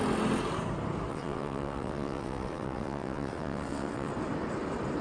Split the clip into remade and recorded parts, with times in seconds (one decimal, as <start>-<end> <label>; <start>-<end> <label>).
0.0-1.1 recorded; 1.1-4.1 remade; 4.1-5.0 recorded